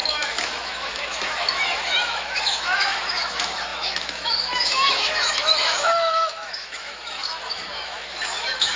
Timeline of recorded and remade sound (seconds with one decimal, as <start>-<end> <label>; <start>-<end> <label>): 0.0-8.8 remade